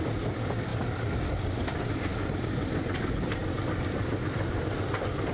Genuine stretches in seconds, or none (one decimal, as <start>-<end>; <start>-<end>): 0.0-5.3